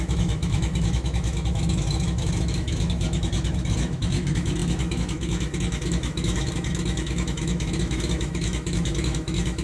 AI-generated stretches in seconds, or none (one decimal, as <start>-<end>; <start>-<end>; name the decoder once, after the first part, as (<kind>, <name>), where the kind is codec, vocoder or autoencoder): 0.0-9.6 (autoencoder, DAC-VAE)